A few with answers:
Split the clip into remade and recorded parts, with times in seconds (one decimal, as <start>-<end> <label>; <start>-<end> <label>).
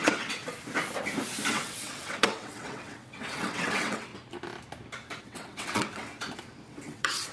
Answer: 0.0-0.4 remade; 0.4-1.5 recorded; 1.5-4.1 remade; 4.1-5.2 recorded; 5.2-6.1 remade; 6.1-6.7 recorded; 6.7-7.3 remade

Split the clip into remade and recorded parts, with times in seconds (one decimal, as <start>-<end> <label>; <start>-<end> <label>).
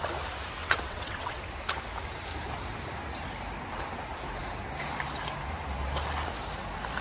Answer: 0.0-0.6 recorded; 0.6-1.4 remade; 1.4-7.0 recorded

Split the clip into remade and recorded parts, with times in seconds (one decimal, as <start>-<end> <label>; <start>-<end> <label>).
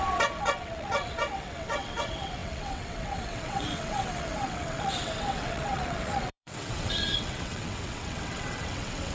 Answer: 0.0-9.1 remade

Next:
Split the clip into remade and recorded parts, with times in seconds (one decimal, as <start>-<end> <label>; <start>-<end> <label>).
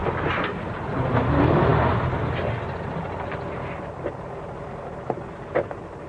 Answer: 0.0-6.1 recorded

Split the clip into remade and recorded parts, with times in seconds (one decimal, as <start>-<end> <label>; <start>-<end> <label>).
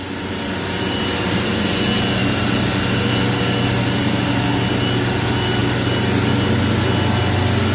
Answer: 0.0-7.7 recorded